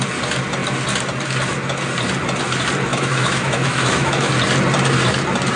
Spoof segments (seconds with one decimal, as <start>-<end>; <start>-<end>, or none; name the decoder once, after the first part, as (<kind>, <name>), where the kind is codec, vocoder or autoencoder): 2.9-4.3 (autoencoder, DAC-VAE)

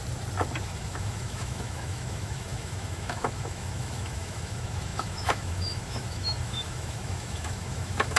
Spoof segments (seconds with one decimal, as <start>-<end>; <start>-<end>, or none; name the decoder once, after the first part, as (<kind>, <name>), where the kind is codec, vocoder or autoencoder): 0.6-8.2 (autoencoder, DAC-VAE)

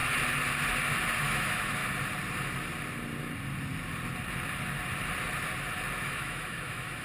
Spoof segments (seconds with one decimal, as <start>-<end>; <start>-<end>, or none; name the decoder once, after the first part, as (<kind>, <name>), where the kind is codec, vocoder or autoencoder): 1.2-1.8 (autoencoder, DAC-VAE); 6.0-7.0

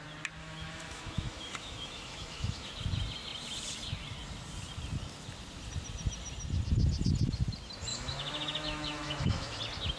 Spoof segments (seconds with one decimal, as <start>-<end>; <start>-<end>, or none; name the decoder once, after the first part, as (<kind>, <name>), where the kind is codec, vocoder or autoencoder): 0.4-2.7 (autoencoder, DAC-VAE); 7.9-9.6

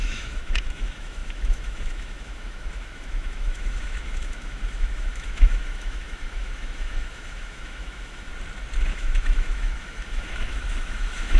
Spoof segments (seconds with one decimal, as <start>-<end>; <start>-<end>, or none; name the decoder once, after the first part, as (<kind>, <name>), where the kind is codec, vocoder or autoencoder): 0.0-8.3 (autoencoder, DAC-VAE); 8.9-11.4